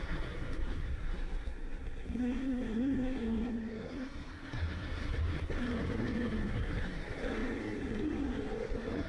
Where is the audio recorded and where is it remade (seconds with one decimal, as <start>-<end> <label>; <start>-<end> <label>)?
0.0-9.1 remade